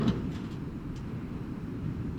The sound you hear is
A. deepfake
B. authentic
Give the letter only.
A